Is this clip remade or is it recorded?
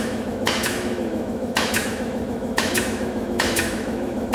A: remade